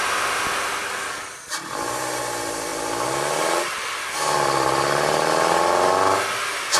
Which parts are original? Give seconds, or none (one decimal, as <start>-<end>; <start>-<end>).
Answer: 0.0-0.8; 1.3-6.8